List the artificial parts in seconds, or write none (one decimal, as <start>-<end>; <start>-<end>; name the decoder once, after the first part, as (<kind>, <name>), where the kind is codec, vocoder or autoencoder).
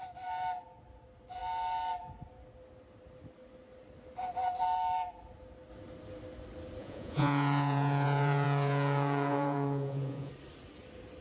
6.8-10.3 (vocoder, Vocos)